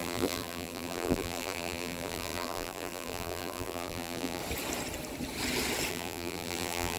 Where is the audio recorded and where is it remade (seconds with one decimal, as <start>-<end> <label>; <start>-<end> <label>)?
0.0-4.4 remade; 4.4-5.9 recorded; 5.9-7.0 remade